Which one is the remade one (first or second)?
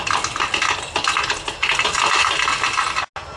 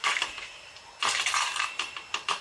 second